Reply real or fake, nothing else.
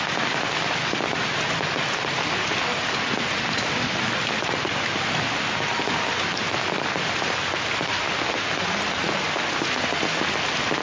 real